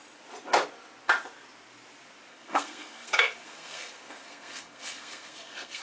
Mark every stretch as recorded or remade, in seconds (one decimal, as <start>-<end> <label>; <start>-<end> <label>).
0.0-2.3 recorded; 2.3-5.8 remade